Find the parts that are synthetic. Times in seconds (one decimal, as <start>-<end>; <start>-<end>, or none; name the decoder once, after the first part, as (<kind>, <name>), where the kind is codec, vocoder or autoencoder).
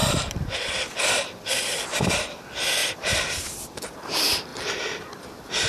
0.0-2.1 (vocoder, BigVGAN v2); 2.8-3.5; 4.5-5.7